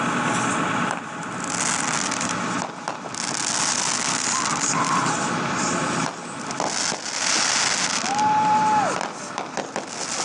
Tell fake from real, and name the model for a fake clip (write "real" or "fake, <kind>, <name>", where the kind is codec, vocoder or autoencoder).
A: real